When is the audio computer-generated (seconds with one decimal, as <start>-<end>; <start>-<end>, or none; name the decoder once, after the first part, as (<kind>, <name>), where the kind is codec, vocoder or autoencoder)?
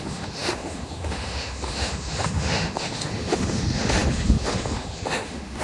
0.0-5.6 (autoencoder, DAC-VAE)